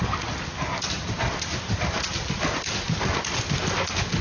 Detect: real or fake real